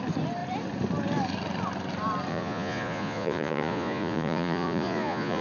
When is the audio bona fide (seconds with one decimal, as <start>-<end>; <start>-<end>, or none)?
0.0-2.3